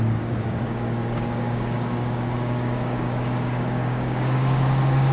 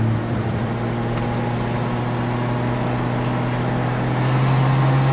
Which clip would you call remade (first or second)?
first